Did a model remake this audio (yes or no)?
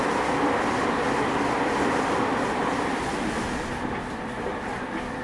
yes